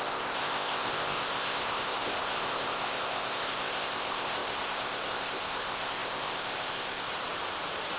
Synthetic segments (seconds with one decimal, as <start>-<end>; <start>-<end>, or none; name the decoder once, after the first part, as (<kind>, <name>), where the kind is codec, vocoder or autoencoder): 0.0-7.0 (codec, ZipCodec)